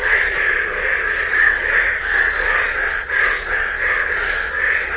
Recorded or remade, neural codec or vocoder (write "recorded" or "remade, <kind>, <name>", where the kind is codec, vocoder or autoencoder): remade, vocoder, Vocos